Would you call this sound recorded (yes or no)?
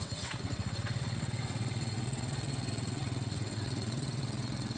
no